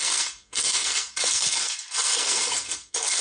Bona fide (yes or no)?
no